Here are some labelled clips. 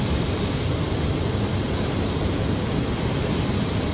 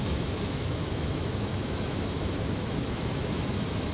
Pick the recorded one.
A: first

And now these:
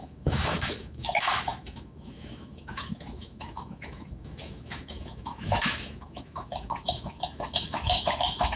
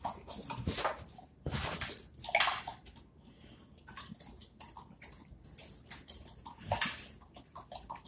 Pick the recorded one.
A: second